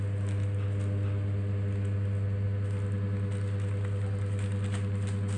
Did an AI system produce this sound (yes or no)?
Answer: no